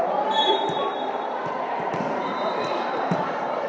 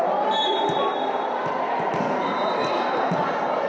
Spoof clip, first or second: first